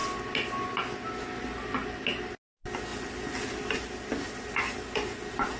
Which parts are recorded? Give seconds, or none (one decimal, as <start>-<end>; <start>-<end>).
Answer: 0.0-2.9; 3.7-5.6